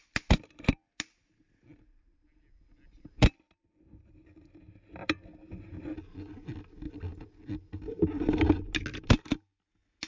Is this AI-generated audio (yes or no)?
no